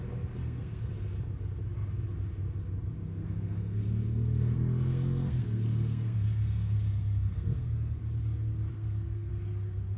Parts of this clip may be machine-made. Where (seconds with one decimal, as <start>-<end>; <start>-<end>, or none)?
0.4-0.9; 3.1-8.0; 8.7-9.3